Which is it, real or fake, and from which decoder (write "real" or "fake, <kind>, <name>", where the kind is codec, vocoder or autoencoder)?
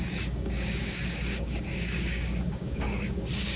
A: fake, codec, DAC